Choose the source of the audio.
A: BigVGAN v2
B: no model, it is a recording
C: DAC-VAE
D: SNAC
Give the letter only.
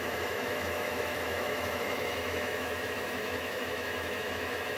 C